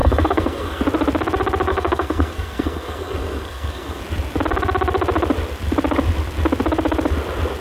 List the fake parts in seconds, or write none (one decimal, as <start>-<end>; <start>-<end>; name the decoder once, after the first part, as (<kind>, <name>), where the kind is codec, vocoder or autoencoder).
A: 0.0-0.8 (codec, SNAC); 1.7-4.0